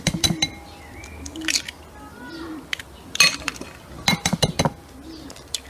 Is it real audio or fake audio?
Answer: real